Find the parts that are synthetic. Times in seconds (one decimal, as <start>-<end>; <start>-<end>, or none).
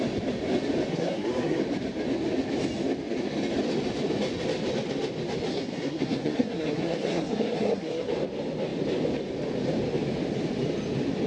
0.9-1.6; 5.5-8.1